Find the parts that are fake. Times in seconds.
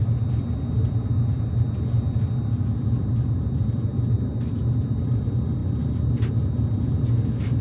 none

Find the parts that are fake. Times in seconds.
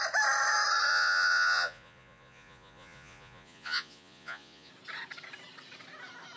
0.9-4.7 (vocoder, Vocos)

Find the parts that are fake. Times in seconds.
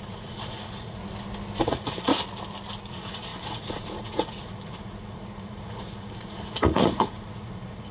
0.0-1.0 (vocoder, Vocos); 1.6-2.1; 2.9-7.9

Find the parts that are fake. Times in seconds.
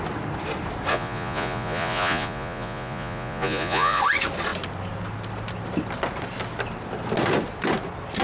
0.9-4.0 (vocoder, Vocos)